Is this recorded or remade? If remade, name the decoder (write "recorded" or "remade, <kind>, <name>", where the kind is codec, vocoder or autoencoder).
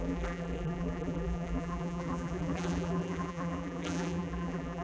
remade, vocoder, BigVGAN v2